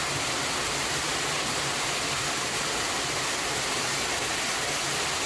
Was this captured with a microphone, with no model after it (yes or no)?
yes